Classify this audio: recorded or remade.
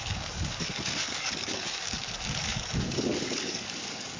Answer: remade